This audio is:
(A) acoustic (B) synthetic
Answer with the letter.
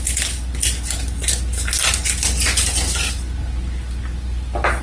A